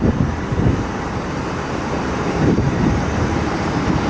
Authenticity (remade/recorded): remade